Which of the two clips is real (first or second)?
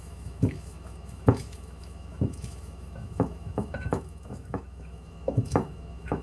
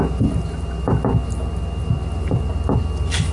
second